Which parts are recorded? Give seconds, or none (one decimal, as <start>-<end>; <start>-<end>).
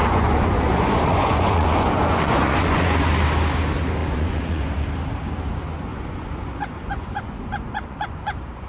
3.1-4.0; 4.7-5.9